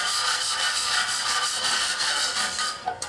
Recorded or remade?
remade